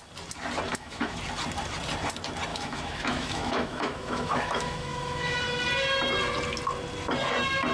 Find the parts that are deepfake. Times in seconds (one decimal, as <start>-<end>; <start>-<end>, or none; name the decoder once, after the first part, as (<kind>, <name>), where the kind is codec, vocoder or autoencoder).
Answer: 0.7-1.2 (autoencoder, DAC-VAE); 2.5-5.4